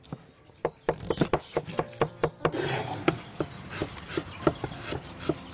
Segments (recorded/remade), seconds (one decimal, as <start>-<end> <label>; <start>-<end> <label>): 0.0-5.5 recorded